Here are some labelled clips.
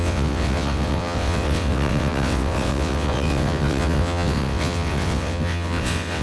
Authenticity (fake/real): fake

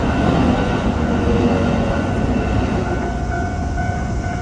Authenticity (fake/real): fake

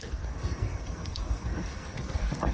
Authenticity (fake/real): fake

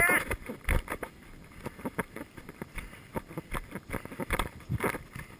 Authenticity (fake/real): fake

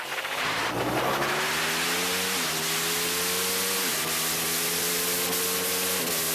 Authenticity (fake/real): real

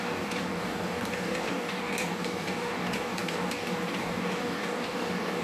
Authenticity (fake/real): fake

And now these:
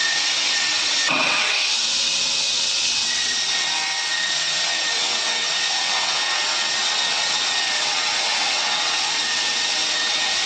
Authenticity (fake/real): fake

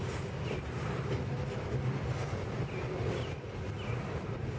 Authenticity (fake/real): real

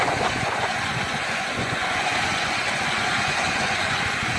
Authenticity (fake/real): fake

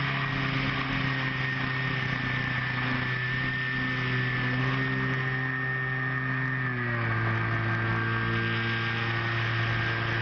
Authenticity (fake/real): real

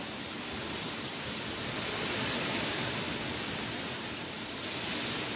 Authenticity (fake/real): real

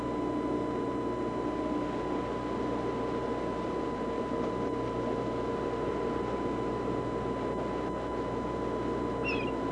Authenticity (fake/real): real